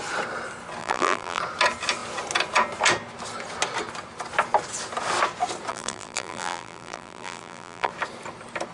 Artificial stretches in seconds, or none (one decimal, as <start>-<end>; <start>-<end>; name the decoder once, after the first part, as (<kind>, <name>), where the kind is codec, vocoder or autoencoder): 0.8-1.4 (vocoder, BigVGAN v2); 5.7-7.9